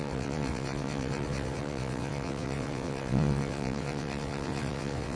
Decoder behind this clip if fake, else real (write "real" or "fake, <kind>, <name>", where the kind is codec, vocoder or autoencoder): fake, vocoder, WaveNeXt